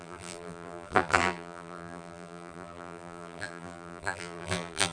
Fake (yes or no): yes